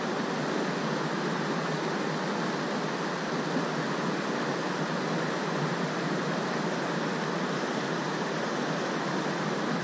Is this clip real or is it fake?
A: real